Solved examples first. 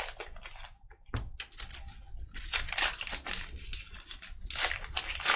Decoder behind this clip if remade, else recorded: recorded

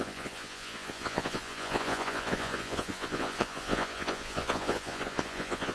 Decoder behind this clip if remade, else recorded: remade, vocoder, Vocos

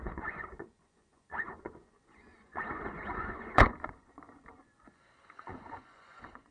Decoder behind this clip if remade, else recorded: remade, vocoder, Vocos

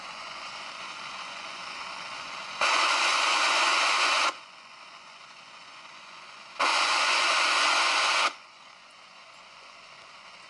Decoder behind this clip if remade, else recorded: remade, vocoder, Vocos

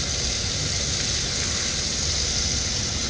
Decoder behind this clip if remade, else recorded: recorded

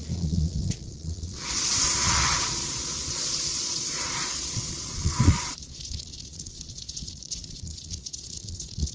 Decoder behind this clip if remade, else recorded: remade, vocoder, Vocos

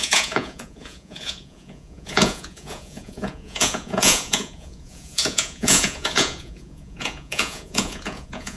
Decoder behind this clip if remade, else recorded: remade, vocoder, Vocos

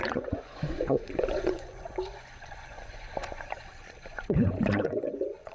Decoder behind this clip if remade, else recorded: remade, vocoder, Vocos